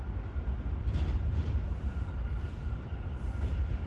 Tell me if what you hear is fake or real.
real